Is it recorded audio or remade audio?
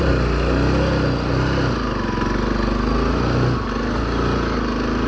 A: recorded